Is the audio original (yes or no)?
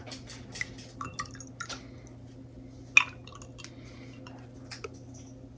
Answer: yes